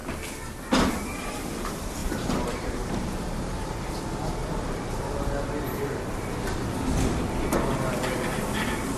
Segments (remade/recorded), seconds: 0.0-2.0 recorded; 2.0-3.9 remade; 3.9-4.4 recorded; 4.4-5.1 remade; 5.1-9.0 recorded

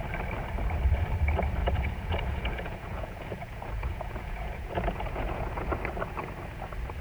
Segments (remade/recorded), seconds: 0.0-1.6 recorded; 1.6-5.8 remade; 5.8-7.0 recorded

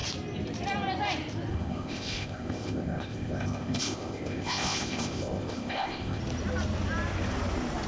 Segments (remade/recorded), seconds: 0.0-1.5 recorded; 1.5-6.2 remade; 6.2-7.9 recorded

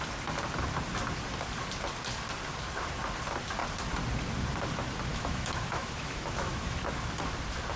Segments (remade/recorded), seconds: 0.0-5.1 recorded; 5.1-6.8 remade; 6.8-7.8 recorded

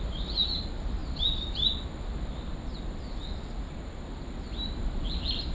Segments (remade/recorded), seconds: 0.0-5.5 recorded